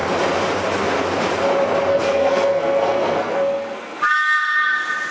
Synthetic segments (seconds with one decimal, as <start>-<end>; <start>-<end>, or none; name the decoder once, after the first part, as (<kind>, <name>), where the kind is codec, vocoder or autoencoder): 1.9-4.0 (codec, SNAC)